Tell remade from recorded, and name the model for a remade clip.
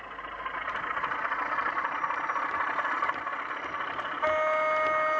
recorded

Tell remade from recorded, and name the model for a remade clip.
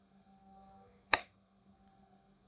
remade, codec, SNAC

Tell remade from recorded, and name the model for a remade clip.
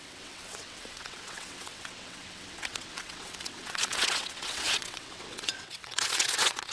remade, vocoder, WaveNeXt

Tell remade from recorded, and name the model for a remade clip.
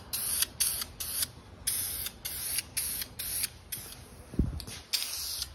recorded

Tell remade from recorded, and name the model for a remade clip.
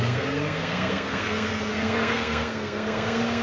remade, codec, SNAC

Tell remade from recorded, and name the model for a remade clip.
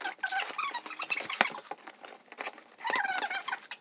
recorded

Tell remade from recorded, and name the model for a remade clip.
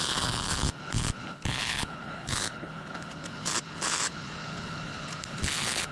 remade, codec, HILCodec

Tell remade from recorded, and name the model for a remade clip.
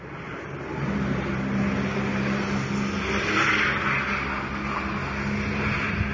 recorded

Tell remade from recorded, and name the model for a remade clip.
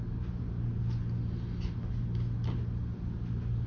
recorded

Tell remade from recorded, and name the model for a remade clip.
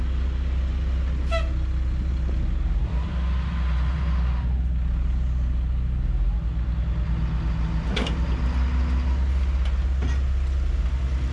recorded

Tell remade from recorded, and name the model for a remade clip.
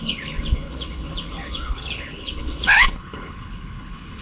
remade, codec, HILCodec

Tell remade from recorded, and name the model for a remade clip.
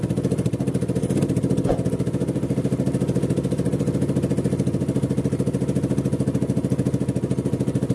recorded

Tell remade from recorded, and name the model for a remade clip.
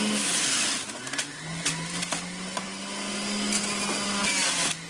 recorded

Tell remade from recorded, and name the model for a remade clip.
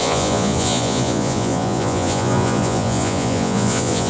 remade, vocoder, Vocos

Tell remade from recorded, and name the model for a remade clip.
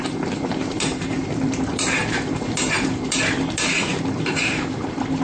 remade, vocoder, BigVGAN v2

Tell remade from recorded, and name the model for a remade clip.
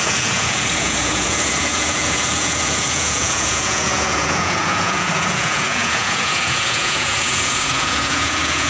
remade, vocoder, Vocos